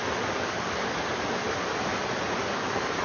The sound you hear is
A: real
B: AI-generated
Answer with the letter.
A